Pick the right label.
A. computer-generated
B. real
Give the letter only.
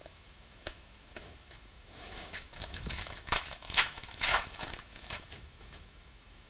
A